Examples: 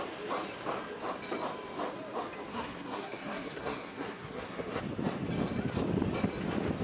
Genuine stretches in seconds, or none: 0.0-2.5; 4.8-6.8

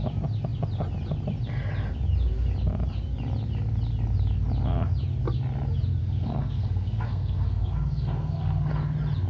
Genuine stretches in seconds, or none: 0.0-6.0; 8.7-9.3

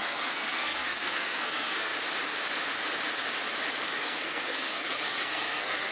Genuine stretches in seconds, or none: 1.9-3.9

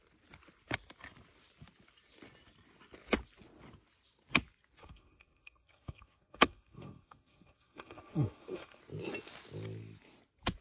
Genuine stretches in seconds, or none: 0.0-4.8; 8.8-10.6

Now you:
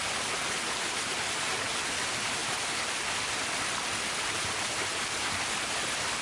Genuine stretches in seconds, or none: 0.0-6.2

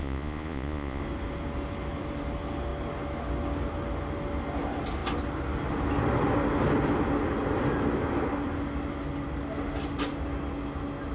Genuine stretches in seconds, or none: 1.0-11.1

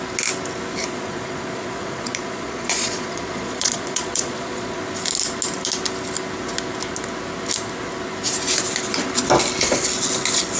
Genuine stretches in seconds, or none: 0.0-0.8; 4.8-10.6